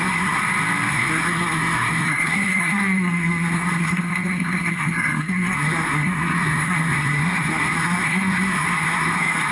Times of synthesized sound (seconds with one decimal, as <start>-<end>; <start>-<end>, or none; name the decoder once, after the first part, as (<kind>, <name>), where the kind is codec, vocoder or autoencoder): 0.0-0.4 (codec, SNAC); 0.9-9.5